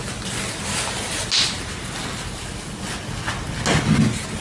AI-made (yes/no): no